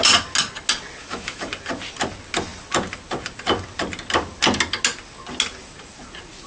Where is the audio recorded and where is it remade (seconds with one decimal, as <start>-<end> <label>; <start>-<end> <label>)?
0.0-1.0 recorded; 1.0-1.5 remade; 1.5-6.5 recorded

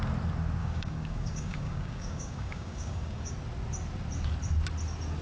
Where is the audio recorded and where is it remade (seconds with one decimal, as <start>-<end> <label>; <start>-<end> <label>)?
0.0-0.6 recorded; 0.6-3.3 remade; 3.3-5.2 recorded